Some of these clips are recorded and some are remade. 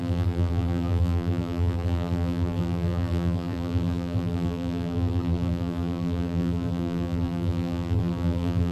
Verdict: remade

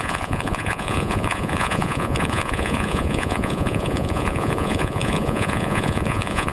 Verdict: remade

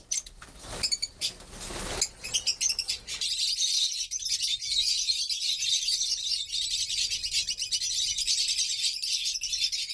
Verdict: recorded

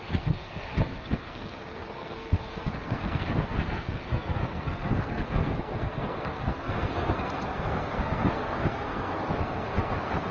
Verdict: remade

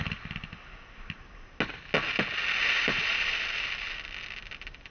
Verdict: recorded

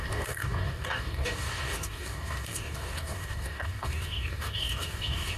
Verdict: remade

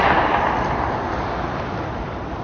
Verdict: recorded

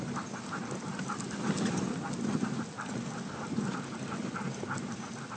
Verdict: recorded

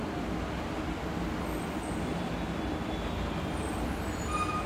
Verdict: recorded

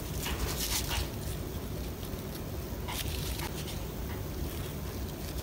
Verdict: recorded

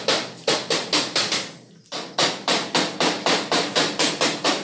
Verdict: recorded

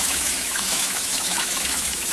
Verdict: remade